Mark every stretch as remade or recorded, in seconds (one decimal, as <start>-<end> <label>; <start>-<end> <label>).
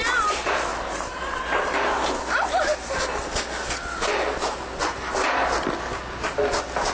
0.0-0.7 recorded; 0.7-1.7 remade; 1.7-6.9 recorded